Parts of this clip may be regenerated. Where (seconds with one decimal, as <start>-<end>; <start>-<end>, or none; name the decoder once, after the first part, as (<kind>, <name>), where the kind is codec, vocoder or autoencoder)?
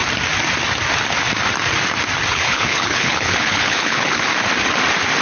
2.3-4.3 (codec, HILCodec)